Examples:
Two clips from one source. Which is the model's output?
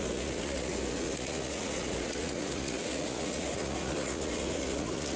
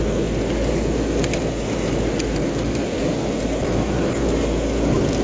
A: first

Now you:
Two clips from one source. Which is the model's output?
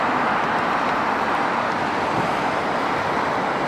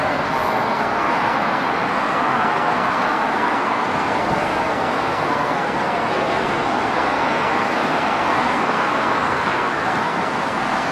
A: second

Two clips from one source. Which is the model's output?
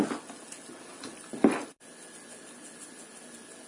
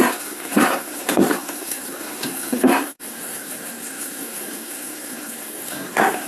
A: second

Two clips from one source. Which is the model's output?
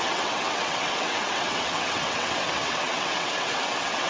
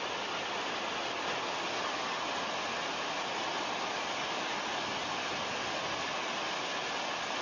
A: first